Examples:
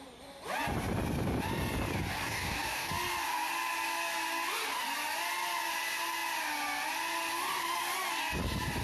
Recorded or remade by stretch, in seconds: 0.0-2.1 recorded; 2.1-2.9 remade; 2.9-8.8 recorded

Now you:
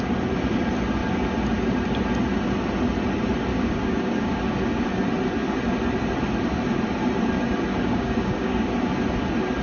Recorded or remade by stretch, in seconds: 0.0-3.5 recorded; 3.5-4.4 remade; 4.4-7.7 recorded; 7.7-8.9 remade; 8.9-9.6 recorded

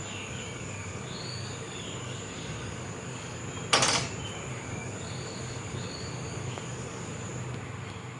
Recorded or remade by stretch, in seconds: 0.0-3.4 remade; 3.4-4.5 recorded; 4.5-7.3 remade; 7.3-8.2 recorded

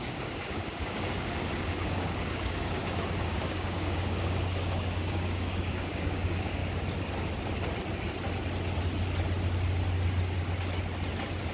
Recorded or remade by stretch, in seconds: 0.0-6.6 remade; 6.6-11.5 recorded

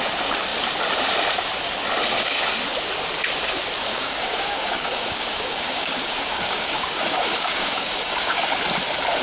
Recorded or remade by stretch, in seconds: 0.0-3.9 recorded; 3.9-8.5 remade; 8.5-9.2 recorded

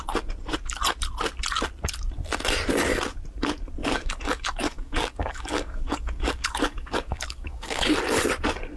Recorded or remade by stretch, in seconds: 0.0-3.8 recorded; 3.8-7.9 remade; 7.9-8.8 recorded